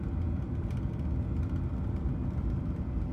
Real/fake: real